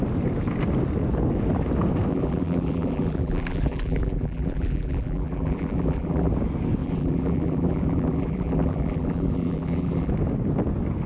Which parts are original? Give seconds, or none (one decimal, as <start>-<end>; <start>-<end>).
0.0-2.1; 6.3-6.8; 10.1-11.1